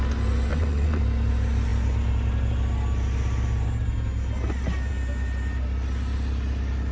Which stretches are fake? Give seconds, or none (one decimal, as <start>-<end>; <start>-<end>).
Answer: 0.5-1.0